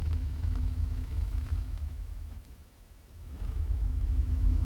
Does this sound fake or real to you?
fake